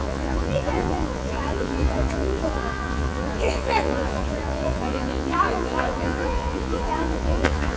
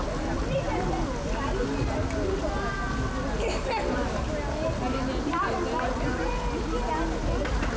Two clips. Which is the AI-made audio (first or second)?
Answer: first